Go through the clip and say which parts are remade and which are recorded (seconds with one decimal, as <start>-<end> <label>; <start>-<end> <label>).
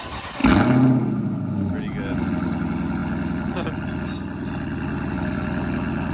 0.0-6.1 recorded